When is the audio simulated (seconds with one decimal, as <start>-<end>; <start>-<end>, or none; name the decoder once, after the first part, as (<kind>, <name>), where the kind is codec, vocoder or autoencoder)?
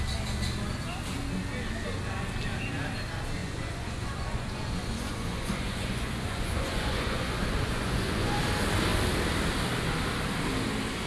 3.4-8.4 (vocoder, Vocos)